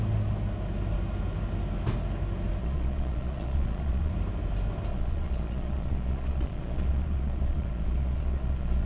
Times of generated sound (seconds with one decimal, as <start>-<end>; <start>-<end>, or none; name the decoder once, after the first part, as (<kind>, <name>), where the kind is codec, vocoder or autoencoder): 2.6-4.1 (vocoder, Vocos); 4.9-8.9